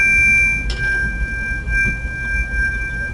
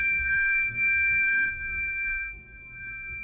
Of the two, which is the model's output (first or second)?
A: second